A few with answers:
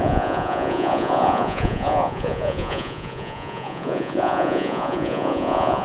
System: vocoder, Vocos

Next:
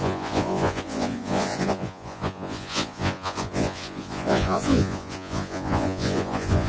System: vocoder, Vocos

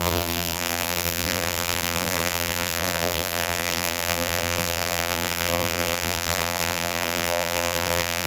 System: vocoder, BigVGAN v2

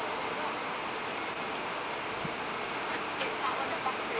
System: none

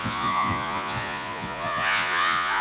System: vocoder, Vocos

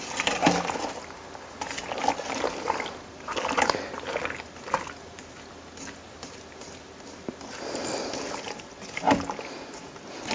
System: none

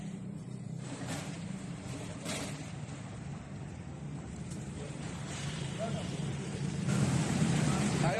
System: vocoder, BigVGAN v2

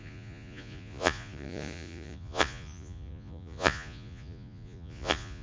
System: vocoder, Vocos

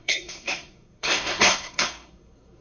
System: codec, SNAC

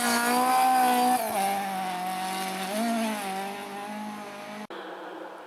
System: none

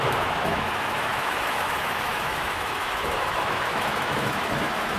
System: autoencoder, DAC-VAE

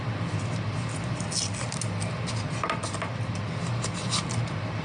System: none